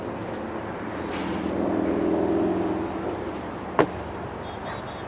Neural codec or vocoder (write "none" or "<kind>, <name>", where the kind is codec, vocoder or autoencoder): none